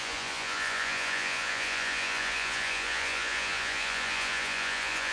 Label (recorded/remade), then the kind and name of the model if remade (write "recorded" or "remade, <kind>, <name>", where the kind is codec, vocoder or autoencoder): remade, vocoder, Vocos